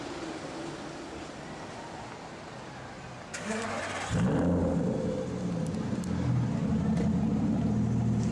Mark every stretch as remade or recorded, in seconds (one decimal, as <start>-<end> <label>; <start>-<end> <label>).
0.0-3.3 recorded; 3.3-3.8 remade; 3.8-8.3 recorded

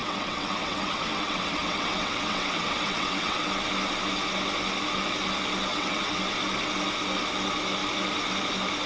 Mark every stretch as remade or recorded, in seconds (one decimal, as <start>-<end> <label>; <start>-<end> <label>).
0.0-3.5 remade; 3.5-5.7 recorded; 5.7-6.2 remade; 6.2-8.9 recorded

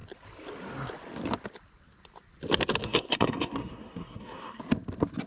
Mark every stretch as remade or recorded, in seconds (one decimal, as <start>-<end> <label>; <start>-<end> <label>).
0.0-2.8 recorded; 2.8-4.6 remade; 4.6-5.3 recorded